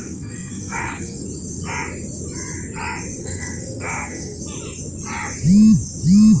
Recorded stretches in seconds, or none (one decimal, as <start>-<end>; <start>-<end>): 1.2-3.2; 4.4-6.4